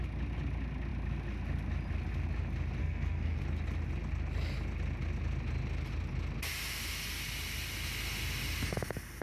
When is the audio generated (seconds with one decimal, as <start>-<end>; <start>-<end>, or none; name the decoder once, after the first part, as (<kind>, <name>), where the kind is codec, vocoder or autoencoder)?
2.8-3.4 (codec, SNAC)

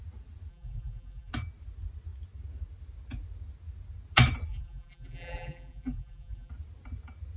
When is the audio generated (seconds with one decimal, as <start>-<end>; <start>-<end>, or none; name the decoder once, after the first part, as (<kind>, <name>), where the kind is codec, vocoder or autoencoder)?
0.5-1.3 (vocoder, BigVGAN v2); 4.5-6.5